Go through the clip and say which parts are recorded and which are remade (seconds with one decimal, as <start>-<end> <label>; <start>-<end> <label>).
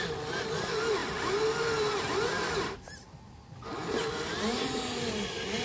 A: 0.0-5.6 recorded